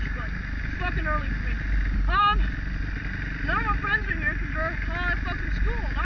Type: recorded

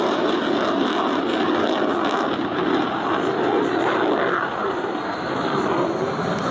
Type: recorded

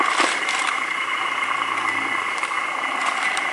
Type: remade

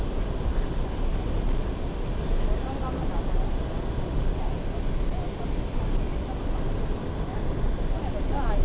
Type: recorded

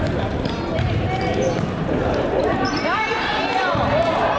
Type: remade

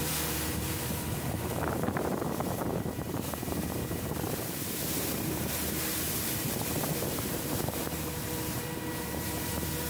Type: remade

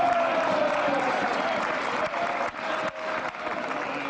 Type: recorded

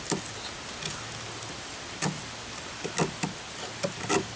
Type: recorded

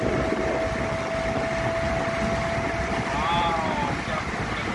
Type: recorded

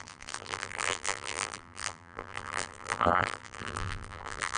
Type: remade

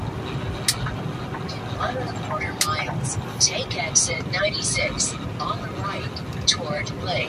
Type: recorded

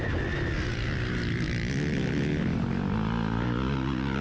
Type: recorded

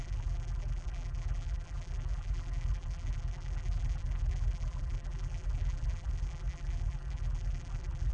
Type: remade